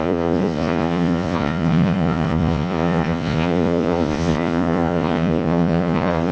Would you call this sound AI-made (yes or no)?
yes